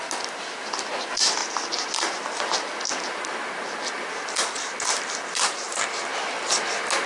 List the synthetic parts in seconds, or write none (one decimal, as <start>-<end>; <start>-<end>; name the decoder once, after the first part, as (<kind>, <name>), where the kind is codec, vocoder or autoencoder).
none